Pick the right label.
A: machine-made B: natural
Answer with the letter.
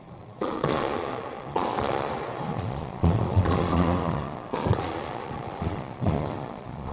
A